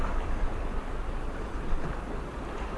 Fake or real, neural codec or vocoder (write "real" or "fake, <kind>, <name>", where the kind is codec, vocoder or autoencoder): real